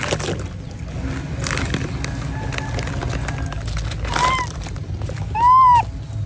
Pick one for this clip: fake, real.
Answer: real